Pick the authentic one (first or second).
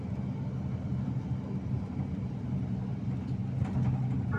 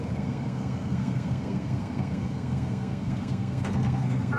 first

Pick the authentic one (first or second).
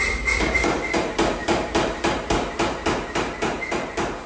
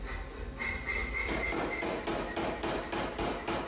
second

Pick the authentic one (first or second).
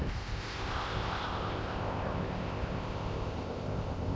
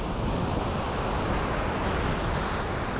second